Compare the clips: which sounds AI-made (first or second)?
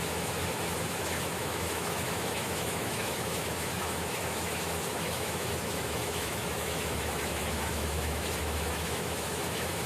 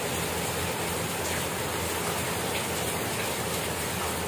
first